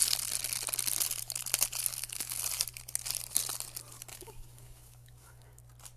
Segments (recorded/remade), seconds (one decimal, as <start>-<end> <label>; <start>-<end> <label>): 0.0-1.9 recorded; 1.9-2.4 remade; 2.4-4.1 recorded; 4.1-5.6 remade; 5.6-6.0 recorded